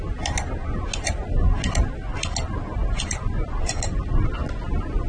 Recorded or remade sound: recorded